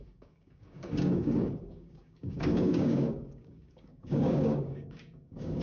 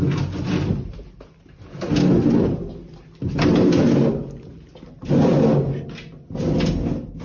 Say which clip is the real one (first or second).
second